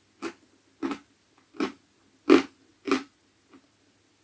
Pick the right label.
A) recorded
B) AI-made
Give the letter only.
A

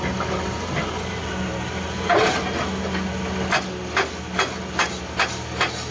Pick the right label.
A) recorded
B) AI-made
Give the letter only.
A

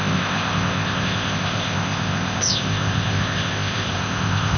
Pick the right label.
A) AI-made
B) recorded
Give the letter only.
A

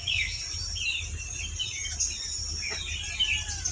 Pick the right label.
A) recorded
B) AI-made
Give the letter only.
A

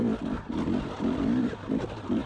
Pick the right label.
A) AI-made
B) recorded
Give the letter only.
B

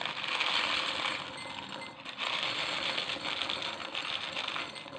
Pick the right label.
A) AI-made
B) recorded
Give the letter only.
B